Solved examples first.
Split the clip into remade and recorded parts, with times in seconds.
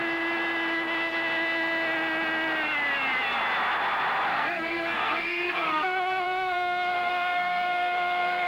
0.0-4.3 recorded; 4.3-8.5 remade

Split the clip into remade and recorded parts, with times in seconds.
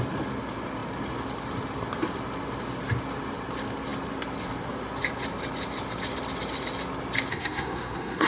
0.0-7.3 recorded; 7.3-8.3 remade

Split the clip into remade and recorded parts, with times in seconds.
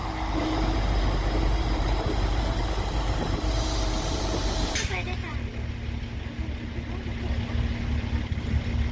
0.0-4.8 remade; 4.8-8.9 recorded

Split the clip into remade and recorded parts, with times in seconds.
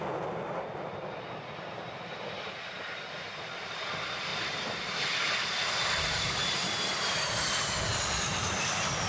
0.0-9.1 recorded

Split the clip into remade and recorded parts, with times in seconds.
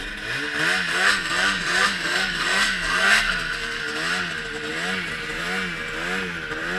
0.0-0.9 recorded; 0.9-3.8 remade; 3.8-6.8 recorded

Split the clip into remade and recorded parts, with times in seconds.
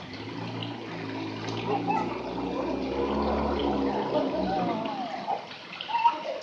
0.0-6.4 recorded